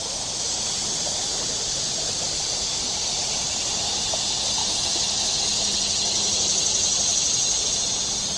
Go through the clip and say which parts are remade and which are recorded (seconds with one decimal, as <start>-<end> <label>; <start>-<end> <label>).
0.0-0.5 remade; 0.5-4.6 recorded; 4.6-5.4 remade; 5.4-8.4 recorded